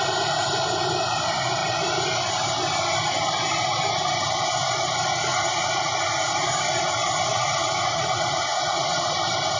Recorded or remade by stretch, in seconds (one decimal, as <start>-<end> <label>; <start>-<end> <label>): 0.0-5.1 recorded; 5.1-5.9 remade; 5.9-7.3 recorded; 7.3-9.1 remade; 9.1-9.6 recorded